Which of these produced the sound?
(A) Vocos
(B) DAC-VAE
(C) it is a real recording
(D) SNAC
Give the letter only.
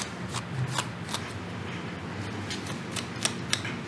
C